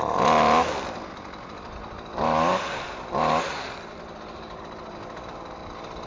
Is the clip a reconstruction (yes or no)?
no